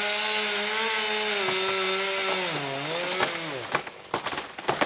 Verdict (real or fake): real